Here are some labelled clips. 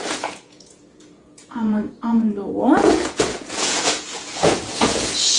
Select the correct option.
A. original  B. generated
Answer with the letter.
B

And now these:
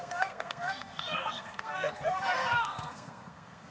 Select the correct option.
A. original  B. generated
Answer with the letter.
B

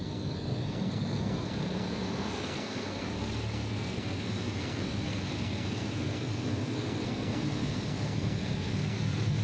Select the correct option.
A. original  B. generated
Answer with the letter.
B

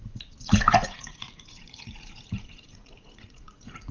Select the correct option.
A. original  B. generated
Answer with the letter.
B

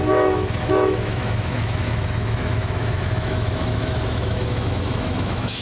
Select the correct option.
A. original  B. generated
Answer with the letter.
B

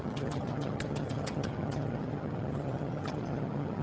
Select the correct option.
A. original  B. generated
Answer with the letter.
B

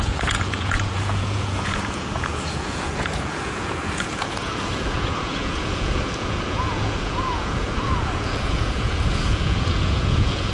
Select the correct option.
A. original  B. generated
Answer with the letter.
B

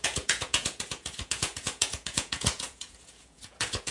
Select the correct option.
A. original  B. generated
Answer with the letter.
B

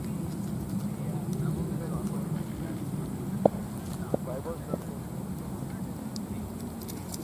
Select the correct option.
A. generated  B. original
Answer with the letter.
B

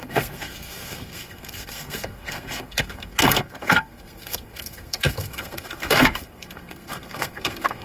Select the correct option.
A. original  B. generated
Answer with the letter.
B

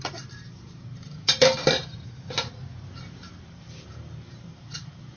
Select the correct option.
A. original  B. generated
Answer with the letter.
B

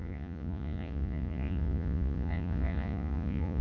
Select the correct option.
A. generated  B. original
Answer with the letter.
A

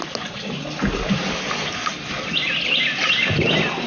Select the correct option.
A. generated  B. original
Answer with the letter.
B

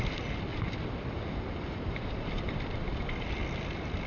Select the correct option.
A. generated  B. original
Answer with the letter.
A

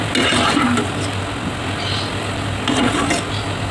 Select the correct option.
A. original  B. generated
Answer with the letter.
A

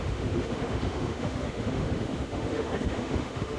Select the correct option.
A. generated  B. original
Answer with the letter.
A